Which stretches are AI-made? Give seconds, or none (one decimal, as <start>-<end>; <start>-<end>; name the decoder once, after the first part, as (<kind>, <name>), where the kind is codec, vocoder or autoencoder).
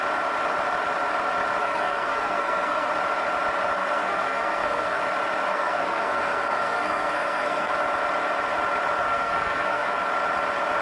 1.6-2.9 (codec, SNAC); 3.8-5.0; 5.5-7.7; 9.0-10.0